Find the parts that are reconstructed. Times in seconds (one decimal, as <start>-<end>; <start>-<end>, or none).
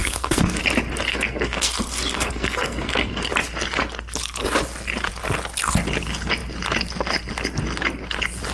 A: 0.0-0.6; 1.1-3.3